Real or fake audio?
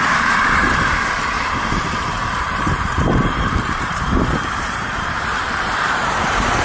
fake